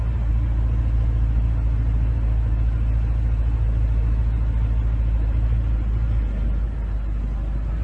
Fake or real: real